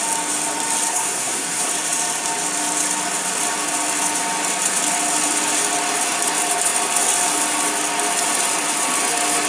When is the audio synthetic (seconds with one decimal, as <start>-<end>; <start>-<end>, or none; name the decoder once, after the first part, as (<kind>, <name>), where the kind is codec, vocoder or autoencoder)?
0.9-1.7 (codec, SNAC)

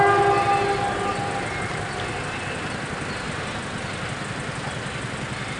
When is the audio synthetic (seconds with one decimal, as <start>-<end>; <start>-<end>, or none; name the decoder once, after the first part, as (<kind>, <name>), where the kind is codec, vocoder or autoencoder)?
none